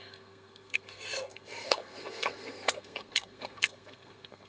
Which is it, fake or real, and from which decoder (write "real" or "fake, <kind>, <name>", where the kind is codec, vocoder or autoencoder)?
fake, codec, SNAC